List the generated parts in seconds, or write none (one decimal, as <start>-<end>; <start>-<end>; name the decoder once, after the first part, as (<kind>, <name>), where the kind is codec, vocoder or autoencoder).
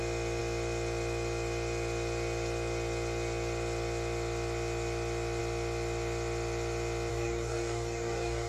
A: 7.1-8.5 (codec, DAC)